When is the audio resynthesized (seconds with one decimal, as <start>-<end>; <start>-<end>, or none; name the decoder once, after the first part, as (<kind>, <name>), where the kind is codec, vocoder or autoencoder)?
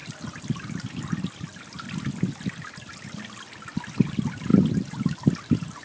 none